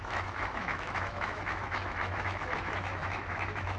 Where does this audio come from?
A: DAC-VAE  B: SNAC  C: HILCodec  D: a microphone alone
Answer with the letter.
A